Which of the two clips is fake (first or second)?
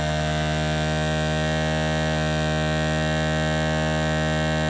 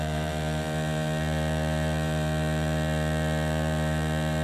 second